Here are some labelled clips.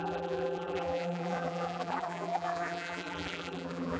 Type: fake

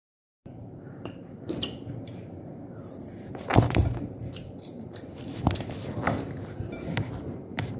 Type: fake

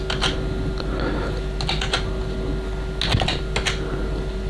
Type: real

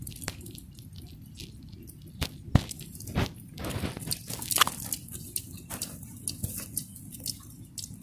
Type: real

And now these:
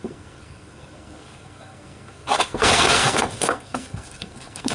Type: fake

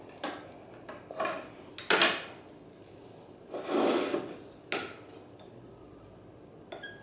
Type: real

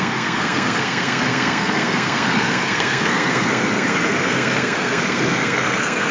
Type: fake